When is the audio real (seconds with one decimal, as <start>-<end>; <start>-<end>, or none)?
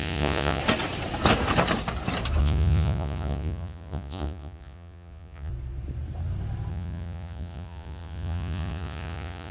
0.6-2.4; 5.5-6.7